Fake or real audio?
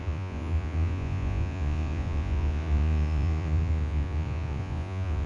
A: fake